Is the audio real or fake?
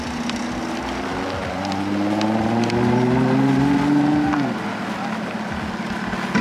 real